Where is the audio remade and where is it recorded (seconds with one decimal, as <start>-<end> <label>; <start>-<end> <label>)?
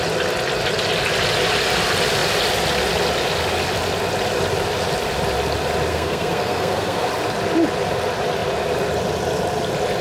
0.0-5.9 recorded; 5.9-7.1 remade; 7.1-10.0 recorded